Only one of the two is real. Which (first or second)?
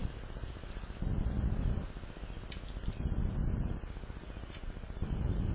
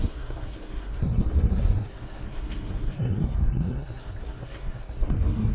first